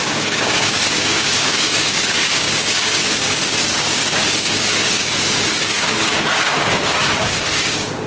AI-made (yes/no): yes